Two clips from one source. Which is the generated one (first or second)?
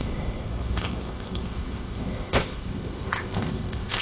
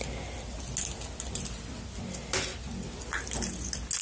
first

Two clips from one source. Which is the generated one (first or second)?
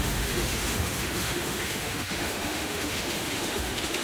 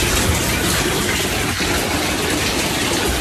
first